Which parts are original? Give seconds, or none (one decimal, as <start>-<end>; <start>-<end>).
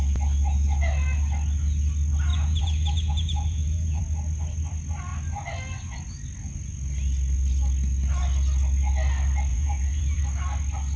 0.0-2.3; 4.0-9.5; 10.2-11.0